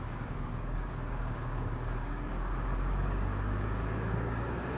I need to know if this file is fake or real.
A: fake